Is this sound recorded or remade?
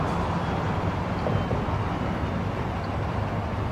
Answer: recorded